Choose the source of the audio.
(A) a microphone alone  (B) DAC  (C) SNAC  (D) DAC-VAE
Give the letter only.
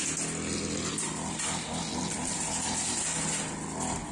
A